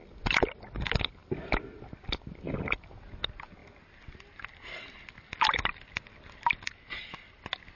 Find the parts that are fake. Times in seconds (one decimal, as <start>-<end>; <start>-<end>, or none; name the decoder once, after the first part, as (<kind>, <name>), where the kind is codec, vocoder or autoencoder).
none